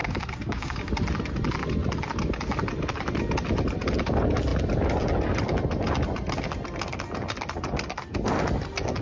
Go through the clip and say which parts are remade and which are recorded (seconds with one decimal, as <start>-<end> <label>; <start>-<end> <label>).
0.0-0.9 remade; 0.9-9.0 recorded